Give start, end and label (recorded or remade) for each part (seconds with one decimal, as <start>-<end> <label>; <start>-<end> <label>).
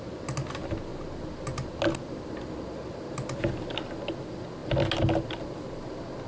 0.0-6.3 recorded